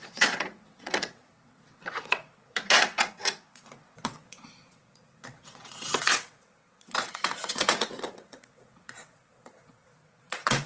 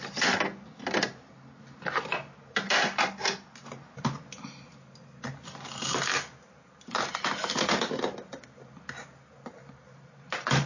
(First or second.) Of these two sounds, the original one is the second